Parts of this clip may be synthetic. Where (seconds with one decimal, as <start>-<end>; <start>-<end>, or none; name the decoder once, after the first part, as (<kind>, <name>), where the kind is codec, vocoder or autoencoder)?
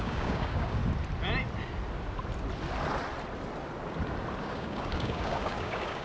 0.0-0.8 (codec, DAC); 4.4-6.0